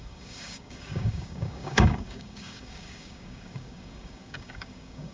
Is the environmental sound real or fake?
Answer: fake